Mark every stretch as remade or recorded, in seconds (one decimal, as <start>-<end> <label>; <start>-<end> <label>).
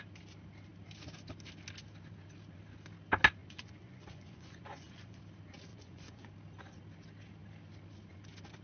0.0-3.4 recorded; 3.4-5.2 remade; 5.2-5.7 recorded; 5.7-6.3 remade; 6.3-8.6 recorded